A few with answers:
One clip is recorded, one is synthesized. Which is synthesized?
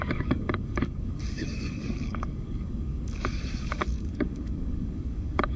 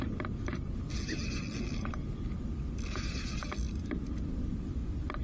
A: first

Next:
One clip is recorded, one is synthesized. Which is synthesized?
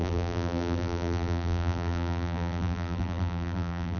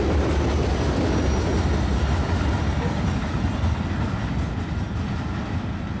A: first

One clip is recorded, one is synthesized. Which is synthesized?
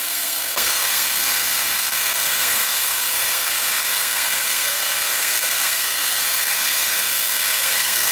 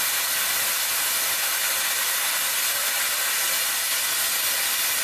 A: first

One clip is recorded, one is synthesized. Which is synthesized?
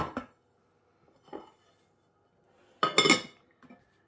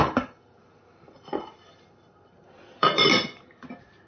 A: second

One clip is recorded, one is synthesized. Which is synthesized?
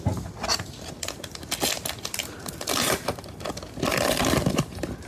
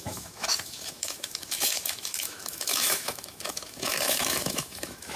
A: second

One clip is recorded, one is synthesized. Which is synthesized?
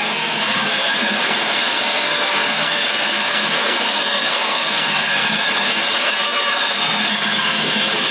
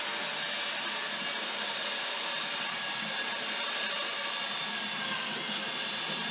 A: first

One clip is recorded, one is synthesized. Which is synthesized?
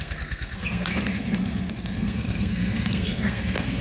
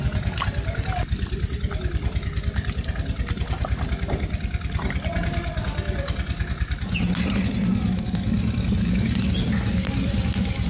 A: first